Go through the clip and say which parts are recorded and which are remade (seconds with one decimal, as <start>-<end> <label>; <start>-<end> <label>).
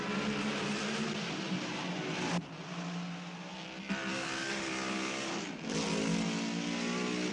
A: 0.0-4.1 recorded; 4.1-5.3 remade; 5.3-7.3 recorded